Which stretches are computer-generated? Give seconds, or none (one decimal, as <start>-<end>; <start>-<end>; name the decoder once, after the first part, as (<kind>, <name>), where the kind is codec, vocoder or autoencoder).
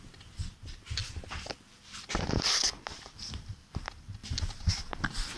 1.0-3.4 (vocoder, BigVGAN v2)